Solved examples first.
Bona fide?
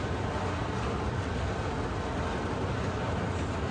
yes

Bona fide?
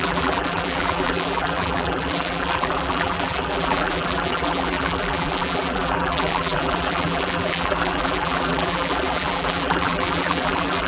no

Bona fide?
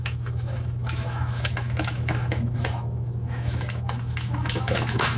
no